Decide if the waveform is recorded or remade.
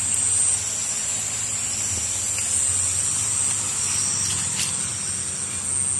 recorded